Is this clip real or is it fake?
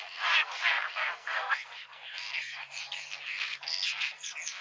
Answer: fake